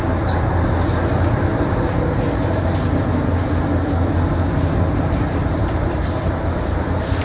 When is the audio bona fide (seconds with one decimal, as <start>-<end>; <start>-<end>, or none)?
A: 0.0-7.2